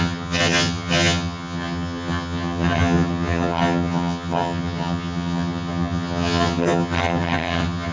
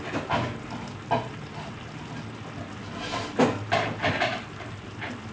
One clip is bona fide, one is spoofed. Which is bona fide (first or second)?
second